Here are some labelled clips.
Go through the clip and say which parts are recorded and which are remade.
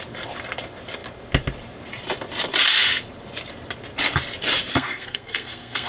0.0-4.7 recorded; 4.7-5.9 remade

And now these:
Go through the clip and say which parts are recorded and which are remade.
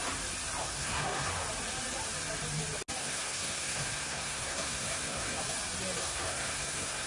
0.0-0.6 recorded; 0.6-1.3 remade; 1.3-3.0 recorded; 3.0-5.4 remade; 5.4-6.0 recorded; 6.0-7.1 remade